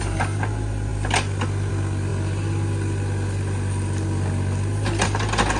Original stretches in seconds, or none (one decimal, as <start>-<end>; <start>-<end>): 0.0-5.6